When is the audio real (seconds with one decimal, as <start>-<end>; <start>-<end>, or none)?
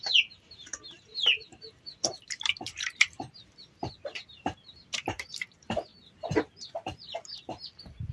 5.9-8.1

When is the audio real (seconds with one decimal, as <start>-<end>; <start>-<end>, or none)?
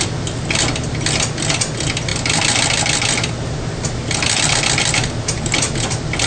0.0-6.3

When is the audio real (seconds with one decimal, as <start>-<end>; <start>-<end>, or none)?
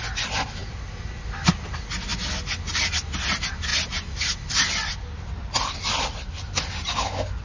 0.0-7.4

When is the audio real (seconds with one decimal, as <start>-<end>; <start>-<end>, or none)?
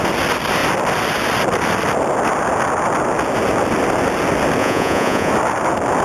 0.0-4.6; 5.3-6.0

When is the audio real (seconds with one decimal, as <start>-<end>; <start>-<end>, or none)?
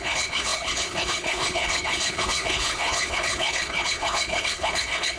none